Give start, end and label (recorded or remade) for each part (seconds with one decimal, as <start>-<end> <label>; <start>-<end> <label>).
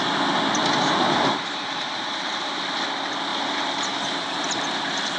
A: 0.0-0.6 recorded; 0.6-2.2 remade; 2.2-3.3 recorded; 3.3-4.6 remade; 4.6-5.2 recorded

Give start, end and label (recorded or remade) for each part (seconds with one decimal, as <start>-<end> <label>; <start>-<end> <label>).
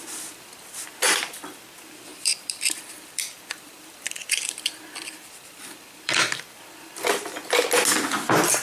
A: 0.0-2.1 recorded; 2.1-7.1 remade; 7.1-8.6 recorded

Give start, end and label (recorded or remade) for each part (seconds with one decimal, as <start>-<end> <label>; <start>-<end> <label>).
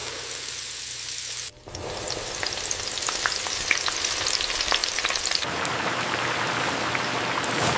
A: 0.0-1.5 recorded; 1.5-4.0 remade; 4.0-4.8 recorded; 4.8-7.8 remade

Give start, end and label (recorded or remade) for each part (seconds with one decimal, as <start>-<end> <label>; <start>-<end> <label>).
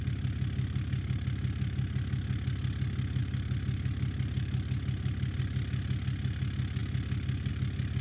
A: 0.0-8.0 recorded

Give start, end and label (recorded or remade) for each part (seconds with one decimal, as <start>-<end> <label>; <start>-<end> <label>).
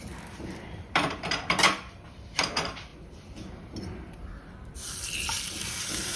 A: 0.0-2.9 remade; 2.9-5.4 recorded; 5.4-6.2 remade